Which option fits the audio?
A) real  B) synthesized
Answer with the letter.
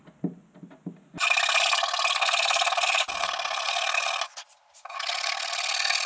A